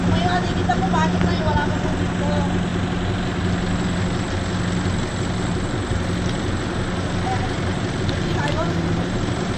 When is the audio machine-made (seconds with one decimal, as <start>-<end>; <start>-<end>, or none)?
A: none